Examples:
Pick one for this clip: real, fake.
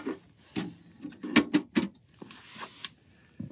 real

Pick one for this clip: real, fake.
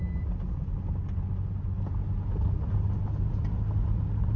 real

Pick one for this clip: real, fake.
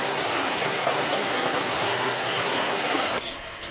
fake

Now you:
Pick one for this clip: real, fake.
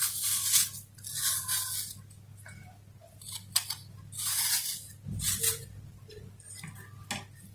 real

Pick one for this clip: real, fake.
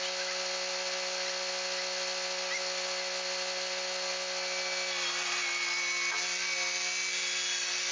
real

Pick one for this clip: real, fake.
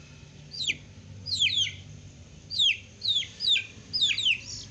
real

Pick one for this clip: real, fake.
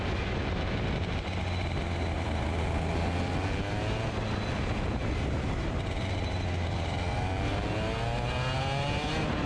real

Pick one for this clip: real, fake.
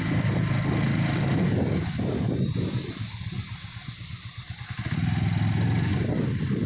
real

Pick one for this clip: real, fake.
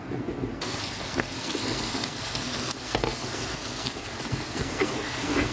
fake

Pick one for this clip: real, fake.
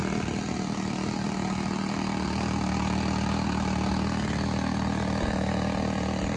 real